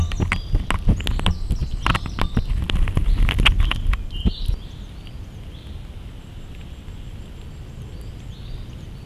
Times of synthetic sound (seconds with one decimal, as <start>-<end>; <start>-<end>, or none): none